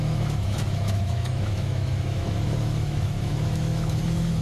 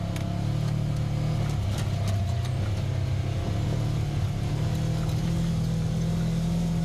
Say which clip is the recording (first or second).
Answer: second